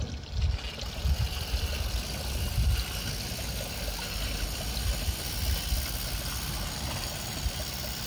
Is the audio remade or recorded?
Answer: recorded